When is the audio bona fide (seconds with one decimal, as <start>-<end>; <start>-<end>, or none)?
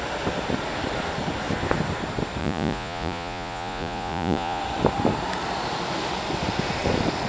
0.0-2.4; 4.6-7.3